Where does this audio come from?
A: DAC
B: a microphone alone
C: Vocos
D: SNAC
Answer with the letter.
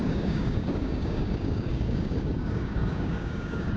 A